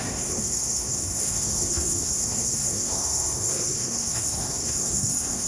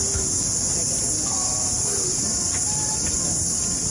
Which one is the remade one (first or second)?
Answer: first